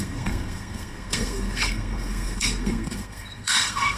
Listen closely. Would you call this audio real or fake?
fake